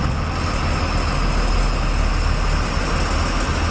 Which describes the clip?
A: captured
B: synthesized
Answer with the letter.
A